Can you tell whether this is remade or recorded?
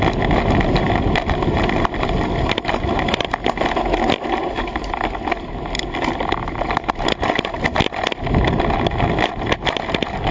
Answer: recorded